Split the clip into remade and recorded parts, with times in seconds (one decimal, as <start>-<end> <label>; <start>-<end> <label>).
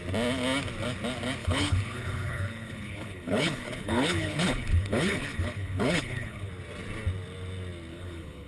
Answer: 0.0-1.4 recorded; 1.4-6.5 remade; 6.5-7.9 recorded; 7.9-8.5 remade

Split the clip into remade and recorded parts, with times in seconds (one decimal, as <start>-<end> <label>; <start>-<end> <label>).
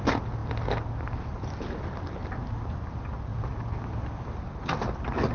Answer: 0.0-5.3 recorded